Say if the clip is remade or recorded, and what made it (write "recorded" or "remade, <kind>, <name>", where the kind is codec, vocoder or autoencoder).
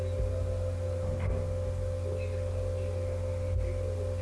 recorded